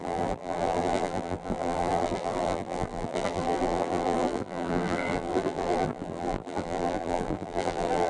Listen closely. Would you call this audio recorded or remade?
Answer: remade